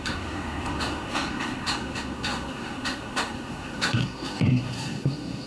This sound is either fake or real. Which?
fake